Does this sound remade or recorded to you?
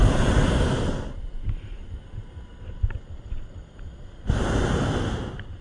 recorded